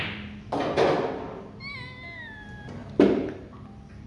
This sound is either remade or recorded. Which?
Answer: recorded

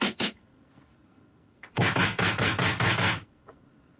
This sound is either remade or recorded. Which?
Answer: remade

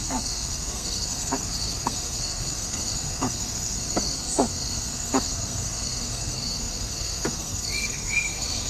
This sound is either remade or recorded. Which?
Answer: remade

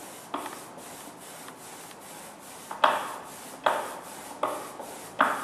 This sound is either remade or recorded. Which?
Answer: recorded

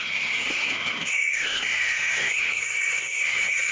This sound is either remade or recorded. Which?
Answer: remade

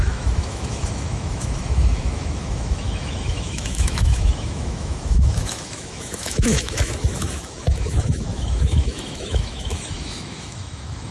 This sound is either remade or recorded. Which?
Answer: remade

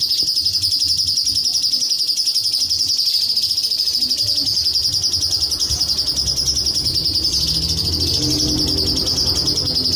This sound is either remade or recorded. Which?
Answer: recorded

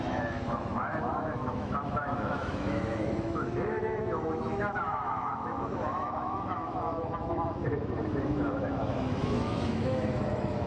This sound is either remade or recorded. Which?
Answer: remade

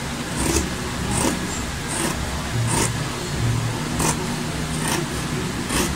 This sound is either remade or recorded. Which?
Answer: recorded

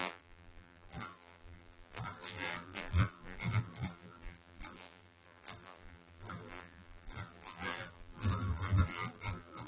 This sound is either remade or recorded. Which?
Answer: remade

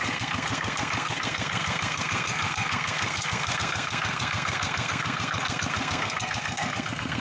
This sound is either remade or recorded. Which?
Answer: remade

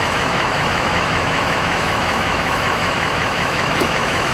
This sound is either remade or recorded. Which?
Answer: remade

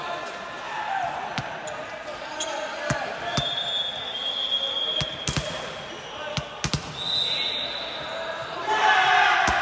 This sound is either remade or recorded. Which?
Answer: recorded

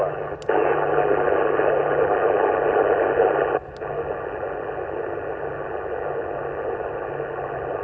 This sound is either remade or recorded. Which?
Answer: recorded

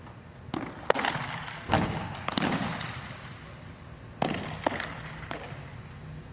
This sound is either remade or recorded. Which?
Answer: recorded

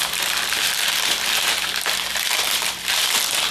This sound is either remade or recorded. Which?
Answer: recorded